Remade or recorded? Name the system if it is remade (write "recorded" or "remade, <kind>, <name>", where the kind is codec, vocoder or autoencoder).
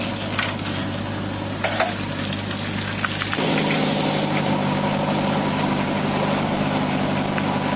recorded